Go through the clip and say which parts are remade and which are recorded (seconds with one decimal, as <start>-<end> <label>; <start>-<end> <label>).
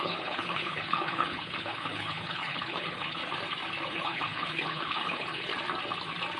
0.0-3.2 remade; 3.2-3.9 recorded; 3.9-5.5 remade; 5.5-6.4 recorded